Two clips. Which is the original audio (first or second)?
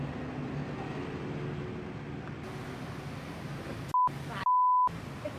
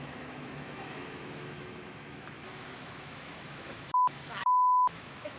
first